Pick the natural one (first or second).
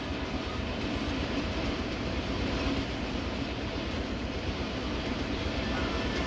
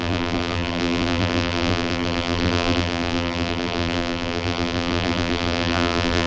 first